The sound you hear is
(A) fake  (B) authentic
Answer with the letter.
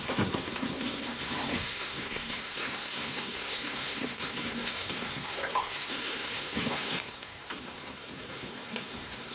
A